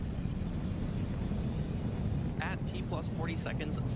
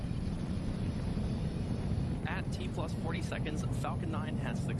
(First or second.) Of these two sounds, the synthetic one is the second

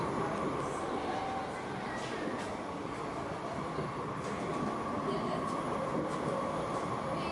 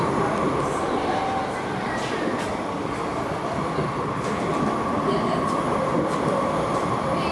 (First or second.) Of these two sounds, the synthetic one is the second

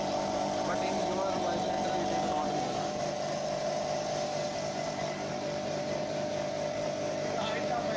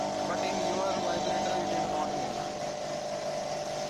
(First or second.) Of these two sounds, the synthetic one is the first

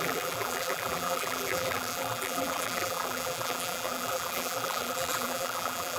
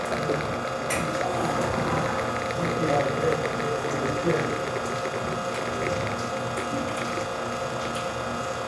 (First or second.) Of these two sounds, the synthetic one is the first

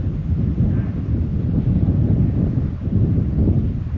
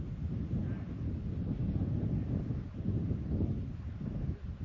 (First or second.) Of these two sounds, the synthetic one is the first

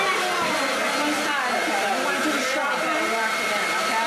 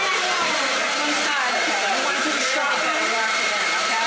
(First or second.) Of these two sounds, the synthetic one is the second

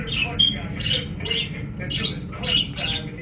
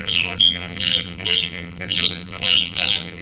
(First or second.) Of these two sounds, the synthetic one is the second